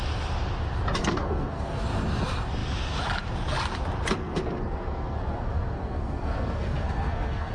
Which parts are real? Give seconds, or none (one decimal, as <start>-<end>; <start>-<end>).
0.0-1.0; 1.8-4.2